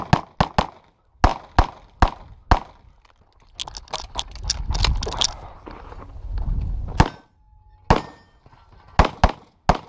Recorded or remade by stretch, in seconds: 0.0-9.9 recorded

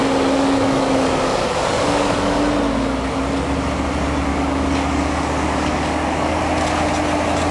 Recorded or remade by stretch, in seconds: 0.0-2.4 remade; 2.4-4.3 recorded; 4.3-6.4 remade; 6.4-7.5 recorded

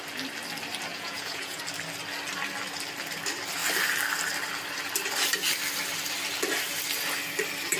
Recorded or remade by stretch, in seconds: 0.0-0.9 recorded; 0.9-1.6 remade; 1.6-7.8 recorded

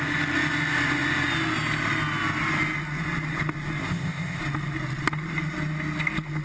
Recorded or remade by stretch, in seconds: 0.0-3.8 recorded; 3.8-4.4 remade; 4.4-6.4 recorded

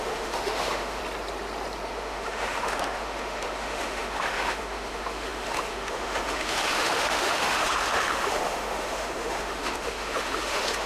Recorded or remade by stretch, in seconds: 0.0-1.0 remade; 1.0-1.9 recorded; 1.9-10.9 remade

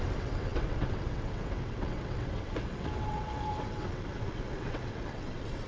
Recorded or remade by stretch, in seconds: 0.0-5.7 remade

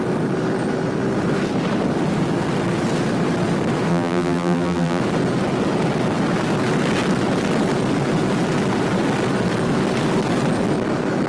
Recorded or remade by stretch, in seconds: 0.0-3.9 recorded; 3.9-5.0 remade; 5.0-11.3 recorded

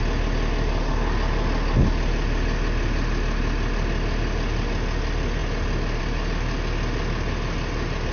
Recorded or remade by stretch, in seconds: 0.0-8.1 recorded